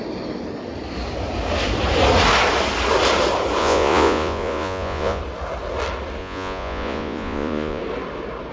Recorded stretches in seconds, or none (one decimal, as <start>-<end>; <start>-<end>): 0.0-3.6; 5.2-6.2; 7.8-8.5